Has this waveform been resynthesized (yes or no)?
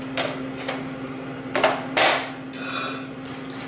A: no